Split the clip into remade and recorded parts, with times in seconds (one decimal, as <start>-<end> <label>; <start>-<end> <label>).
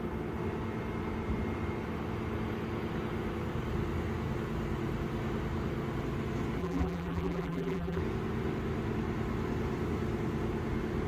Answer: 0.0-6.6 recorded; 6.6-8.0 remade; 8.0-11.1 recorded